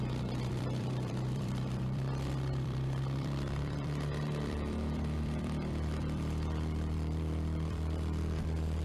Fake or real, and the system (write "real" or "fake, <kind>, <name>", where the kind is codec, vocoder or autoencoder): fake, vocoder, BigVGAN v2